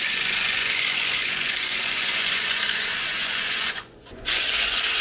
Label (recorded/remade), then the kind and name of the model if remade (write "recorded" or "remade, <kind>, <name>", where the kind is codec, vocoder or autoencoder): remade, vocoder, Vocos